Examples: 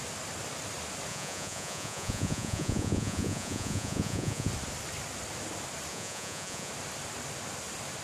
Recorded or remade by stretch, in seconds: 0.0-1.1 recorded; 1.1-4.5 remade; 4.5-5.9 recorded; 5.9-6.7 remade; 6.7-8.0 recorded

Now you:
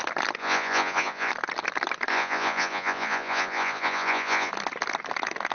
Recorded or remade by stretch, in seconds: 0.0-0.4 recorded; 0.4-1.3 remade; 1.3-2.1 recorded; 2.1-4.5 remade; 4.5-5.5 recorded

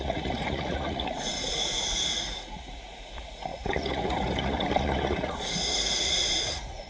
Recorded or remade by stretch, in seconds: 0.0-6.9 remade